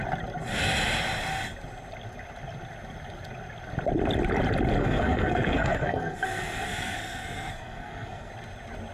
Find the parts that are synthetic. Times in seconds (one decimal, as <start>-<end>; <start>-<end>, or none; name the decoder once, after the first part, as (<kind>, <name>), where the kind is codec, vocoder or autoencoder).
4.8-8.3 (codec, SNAC)